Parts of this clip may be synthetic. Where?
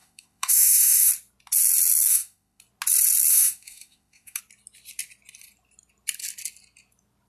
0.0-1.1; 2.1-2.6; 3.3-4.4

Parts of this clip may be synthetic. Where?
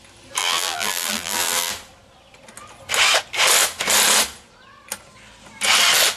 0.4-1.7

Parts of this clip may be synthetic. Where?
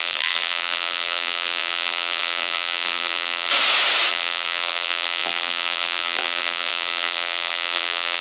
0.0-3.5; 4.1-8.2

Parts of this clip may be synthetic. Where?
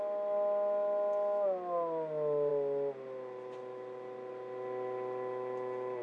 none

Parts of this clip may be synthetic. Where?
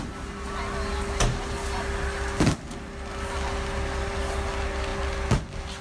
none